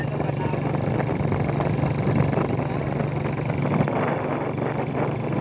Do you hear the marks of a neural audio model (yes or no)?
no